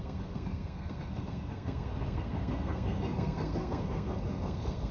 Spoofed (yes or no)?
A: yes